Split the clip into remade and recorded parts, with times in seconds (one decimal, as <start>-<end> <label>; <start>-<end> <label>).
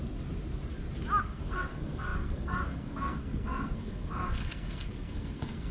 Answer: 0.0-1.2 recorded; 1.2-5.7 remade